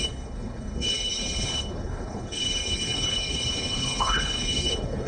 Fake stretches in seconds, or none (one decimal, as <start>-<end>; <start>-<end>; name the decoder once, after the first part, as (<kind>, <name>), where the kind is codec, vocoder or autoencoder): 0.0-5.1 (codec, HILCodec)